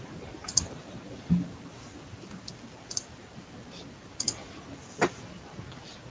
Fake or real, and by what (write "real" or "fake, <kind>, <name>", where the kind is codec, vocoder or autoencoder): real